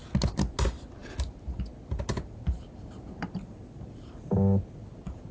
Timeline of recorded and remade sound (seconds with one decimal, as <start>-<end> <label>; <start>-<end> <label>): 0.0-5.3 recorded